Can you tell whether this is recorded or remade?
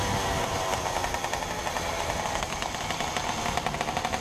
recorded